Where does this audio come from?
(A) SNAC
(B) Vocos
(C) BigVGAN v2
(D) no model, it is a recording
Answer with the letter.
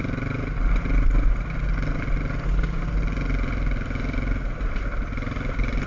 D